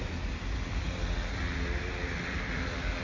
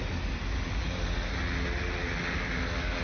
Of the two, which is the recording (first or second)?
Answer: second